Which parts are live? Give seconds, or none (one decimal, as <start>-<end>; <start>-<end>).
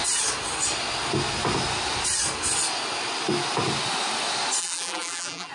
0.0-4.6